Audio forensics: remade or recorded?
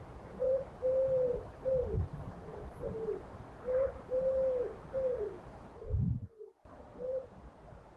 recorded